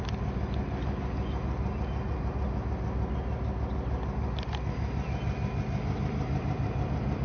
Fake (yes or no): no